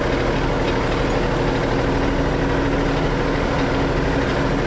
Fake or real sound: real